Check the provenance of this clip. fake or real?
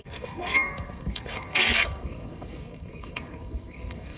fake